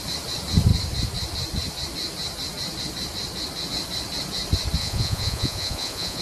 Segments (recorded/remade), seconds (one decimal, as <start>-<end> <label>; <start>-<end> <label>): 0.0-4.8 recorded; 4.8-6.2 remade